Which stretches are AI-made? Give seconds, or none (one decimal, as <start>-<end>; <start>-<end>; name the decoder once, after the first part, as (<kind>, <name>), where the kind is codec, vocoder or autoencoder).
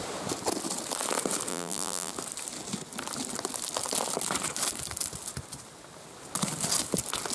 1.5-2.1 (vocoder, BigVGAN v2)